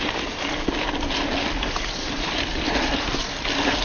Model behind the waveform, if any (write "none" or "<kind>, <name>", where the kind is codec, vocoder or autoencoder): none